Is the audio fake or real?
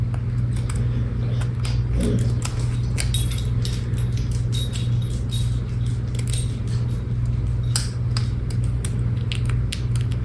real